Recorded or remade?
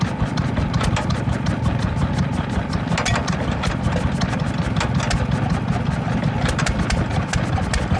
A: recorded